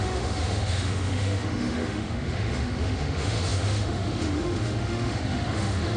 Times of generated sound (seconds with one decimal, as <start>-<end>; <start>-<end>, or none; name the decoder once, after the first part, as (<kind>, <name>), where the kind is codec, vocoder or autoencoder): 0.0-6.0 (autoencoder, DAC-VAE)